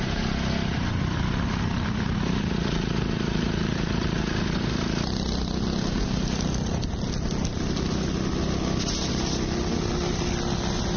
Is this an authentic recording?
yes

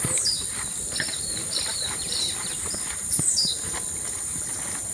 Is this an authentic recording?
yes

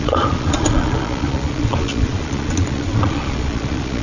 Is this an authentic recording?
no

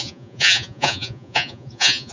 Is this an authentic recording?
no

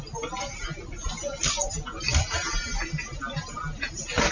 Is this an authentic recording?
yes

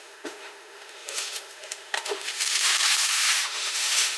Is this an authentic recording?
no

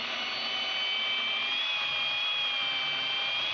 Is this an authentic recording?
yes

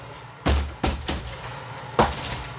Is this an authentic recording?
yes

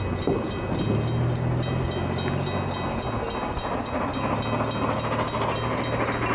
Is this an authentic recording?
yes